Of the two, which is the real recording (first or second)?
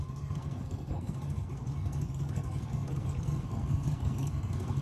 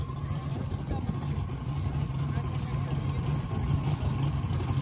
second